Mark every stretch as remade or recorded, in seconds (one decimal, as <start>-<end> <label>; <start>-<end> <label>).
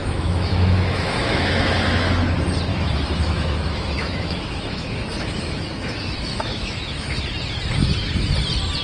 0.0-2.1 remade; 2.1-2.7 recorded; 2.7-7.2 remade; 7.2-8.8 recorded